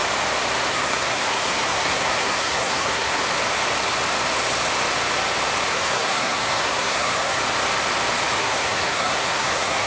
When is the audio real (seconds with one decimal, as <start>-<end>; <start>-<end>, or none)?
0.0-0.7; 3.2-5.7; 7.4-8.4